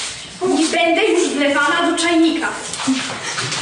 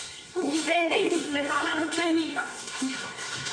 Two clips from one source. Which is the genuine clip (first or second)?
first